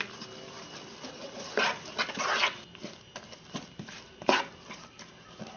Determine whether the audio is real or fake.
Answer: real